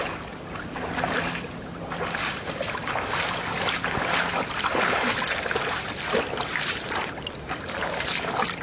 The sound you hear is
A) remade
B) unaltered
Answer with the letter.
B